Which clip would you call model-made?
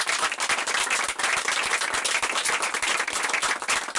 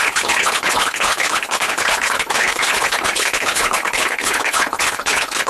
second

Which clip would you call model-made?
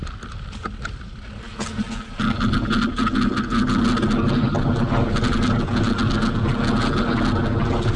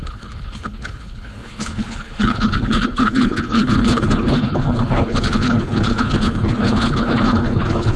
second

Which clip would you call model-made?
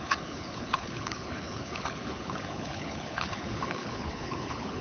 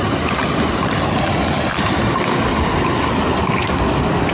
first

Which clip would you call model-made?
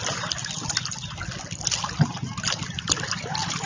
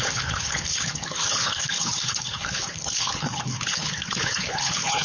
second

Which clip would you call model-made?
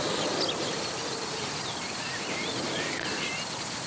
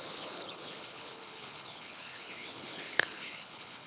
second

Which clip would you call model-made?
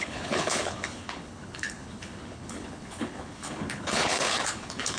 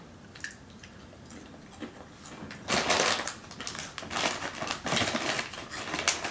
first